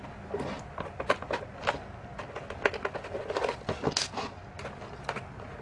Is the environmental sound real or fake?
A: real